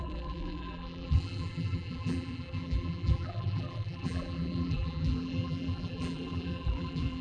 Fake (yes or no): yes